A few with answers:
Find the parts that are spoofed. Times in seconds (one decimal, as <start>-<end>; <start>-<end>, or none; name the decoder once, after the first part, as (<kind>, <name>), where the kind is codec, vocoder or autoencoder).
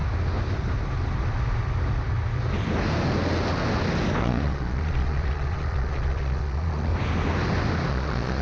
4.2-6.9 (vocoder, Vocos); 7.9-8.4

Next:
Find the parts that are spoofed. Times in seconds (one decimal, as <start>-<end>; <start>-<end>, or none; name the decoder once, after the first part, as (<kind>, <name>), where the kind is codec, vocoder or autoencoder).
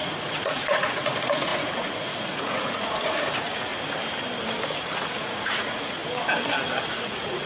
0.0-3.7 (vocoder, Vocos); 4.8-6.0; 7.0-7.5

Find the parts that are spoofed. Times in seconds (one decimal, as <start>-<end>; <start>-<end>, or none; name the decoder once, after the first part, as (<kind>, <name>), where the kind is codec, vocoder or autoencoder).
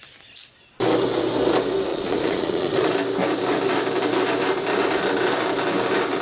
1.9-2.9 (vocoder, Vocos)